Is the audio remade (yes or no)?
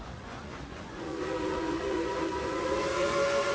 yes